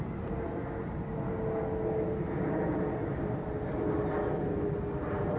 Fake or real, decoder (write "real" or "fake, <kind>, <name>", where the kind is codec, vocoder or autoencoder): real